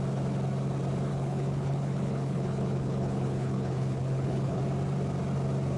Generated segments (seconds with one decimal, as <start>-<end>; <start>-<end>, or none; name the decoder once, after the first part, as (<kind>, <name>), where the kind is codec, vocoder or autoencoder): 1.1-4.6 (codec, HILCodec)